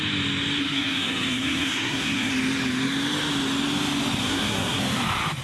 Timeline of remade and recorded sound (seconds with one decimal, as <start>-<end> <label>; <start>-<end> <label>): 0.0-0.6 recorded; 0.6-2.3 remade; 2.3-4.2 recorded; 4.2-4.8 remade; 4.8-5.4 recorded